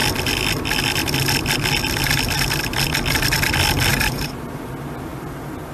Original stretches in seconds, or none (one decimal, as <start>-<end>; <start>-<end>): 0.0-3.9; 4.4-5.7